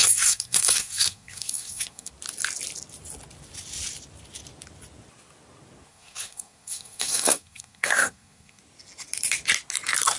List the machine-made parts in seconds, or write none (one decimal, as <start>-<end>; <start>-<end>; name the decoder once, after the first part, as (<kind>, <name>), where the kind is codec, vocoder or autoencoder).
0.0-2.1 (codec, SNAC); 5.9-8.6

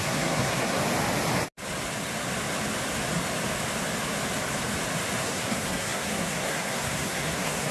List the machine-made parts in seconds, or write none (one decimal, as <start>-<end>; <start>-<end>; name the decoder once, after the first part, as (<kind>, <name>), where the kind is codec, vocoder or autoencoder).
0.0-0.8 (codec, SNAC); 5.2-7.7